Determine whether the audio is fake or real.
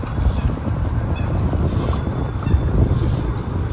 fake